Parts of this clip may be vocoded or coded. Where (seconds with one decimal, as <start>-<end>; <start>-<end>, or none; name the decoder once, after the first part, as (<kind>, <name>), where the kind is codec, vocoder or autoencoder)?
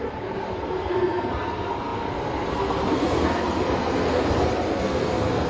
0.0-5.5 (codec, SNAC)